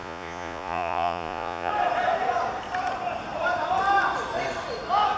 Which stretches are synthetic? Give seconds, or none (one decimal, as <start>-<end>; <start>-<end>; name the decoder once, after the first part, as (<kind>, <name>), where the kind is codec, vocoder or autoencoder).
0.0-1.7 (vocoder, Vocos)